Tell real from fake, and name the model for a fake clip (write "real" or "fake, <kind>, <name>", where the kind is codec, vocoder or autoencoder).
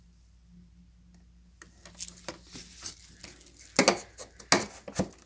real